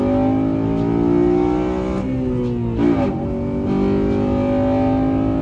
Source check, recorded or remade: recorded